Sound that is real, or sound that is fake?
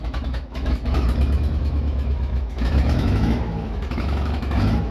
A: fake